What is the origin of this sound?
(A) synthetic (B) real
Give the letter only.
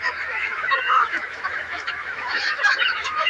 A